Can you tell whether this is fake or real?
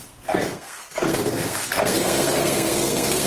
fake